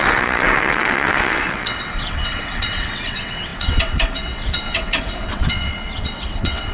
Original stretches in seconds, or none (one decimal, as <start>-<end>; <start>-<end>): none